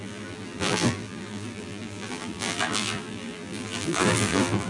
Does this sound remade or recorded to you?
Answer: remade